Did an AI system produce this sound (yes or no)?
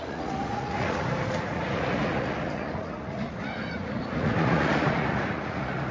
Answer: yes